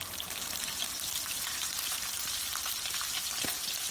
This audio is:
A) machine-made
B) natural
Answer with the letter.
A